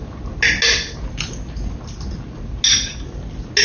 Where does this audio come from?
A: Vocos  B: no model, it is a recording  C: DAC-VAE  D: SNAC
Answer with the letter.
B